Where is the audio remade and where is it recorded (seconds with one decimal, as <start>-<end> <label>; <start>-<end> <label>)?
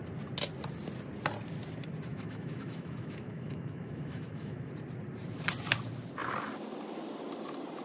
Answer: 0.0-2.1 recorded; 2.1-4.7 remade; 4.7-7.8 recorded